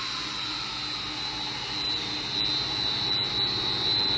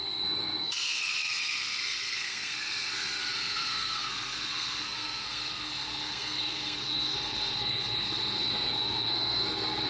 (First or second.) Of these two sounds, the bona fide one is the first